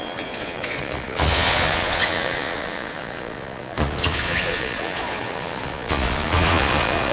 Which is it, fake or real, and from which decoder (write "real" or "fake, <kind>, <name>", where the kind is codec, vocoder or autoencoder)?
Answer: fake, vocoder, Vocos